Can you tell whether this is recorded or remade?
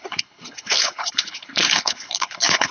remade